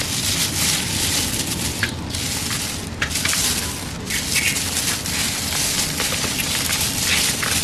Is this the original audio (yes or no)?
yes